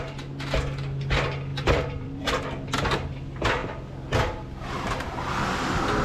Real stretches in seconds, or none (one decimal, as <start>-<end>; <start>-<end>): 0.0-1.5; 2.4-6.0